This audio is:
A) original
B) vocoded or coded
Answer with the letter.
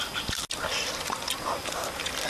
A